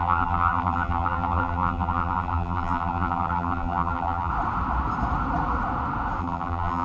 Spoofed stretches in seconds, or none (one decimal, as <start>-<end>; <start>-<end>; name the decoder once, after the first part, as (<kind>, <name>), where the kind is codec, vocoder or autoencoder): 0.0-4.3 (vocoder, BigVGAN v2); 6.2-6.8

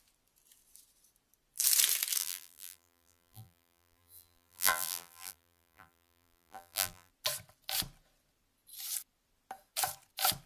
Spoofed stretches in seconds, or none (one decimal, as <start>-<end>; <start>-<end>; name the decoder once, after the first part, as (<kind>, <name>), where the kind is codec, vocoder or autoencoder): 2.2-7.1 (vocoder, BigVGAN v2)

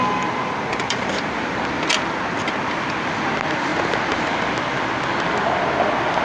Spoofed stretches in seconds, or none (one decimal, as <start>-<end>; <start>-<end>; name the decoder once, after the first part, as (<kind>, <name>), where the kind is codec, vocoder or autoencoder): 0.7-1.6 (vocoder, BigVGAN v2); 3.7-5.6